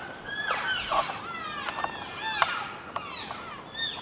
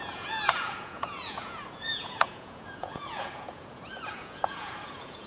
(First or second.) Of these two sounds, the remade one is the second